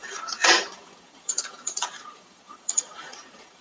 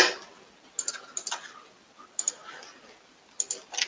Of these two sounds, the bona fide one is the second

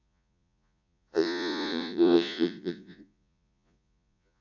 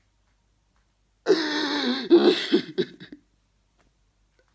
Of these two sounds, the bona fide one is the second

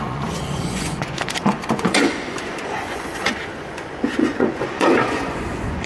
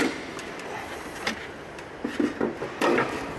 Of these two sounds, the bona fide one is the second